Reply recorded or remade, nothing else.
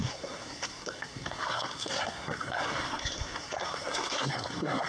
remade